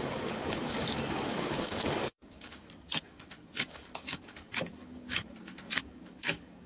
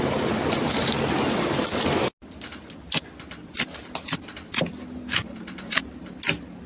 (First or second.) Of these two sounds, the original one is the second